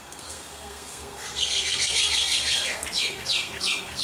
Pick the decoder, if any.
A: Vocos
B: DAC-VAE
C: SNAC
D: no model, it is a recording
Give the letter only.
C